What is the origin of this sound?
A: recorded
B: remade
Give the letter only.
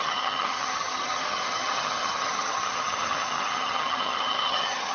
B